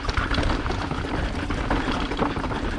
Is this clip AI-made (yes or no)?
no